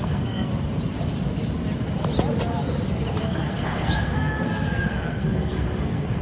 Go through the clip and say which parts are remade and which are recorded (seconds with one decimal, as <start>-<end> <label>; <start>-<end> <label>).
0.0-0.5 remade; 0.5-3.2 recorded; 3.2-6.2 remade